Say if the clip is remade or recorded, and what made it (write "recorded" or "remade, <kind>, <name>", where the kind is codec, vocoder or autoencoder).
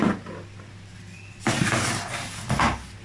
recorded